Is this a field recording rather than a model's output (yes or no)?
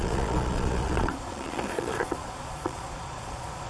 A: no